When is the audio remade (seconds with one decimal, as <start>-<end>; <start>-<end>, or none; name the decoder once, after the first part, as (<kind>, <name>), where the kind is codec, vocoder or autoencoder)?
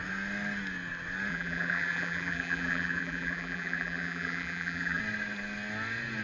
1.3-5.0 (vocoder, BigVGAN v2)